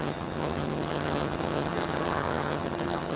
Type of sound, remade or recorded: remade